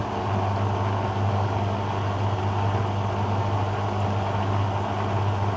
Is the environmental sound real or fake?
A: real